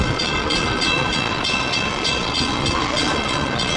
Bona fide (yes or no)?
no